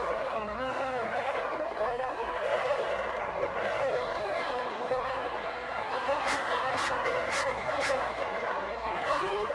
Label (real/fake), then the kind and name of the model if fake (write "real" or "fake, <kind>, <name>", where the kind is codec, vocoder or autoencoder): fake, codec, SNAC